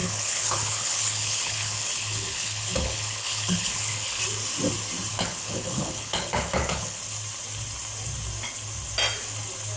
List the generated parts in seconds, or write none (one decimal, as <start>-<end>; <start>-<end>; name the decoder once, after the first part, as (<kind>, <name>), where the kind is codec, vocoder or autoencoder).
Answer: 0.0-4.2 (codec, HILCodec); 5.1-7.0